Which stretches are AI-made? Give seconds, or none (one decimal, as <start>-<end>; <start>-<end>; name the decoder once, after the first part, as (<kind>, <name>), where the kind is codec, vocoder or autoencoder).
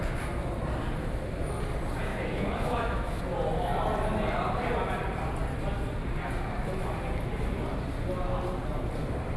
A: 2.1-3.2 (autoencoder, DAC-VAE)